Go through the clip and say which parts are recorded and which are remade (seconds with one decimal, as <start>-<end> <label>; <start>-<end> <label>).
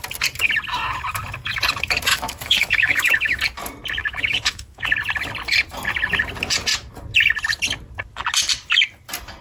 0.0-2.1 recorded; 2.1-3.4 remade; 3.4-4.0 recorded; 4.0-4.9 remade; 4.9-9.4 recorded